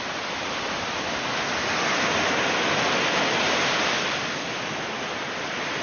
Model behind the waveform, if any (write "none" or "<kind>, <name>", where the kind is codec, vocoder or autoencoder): none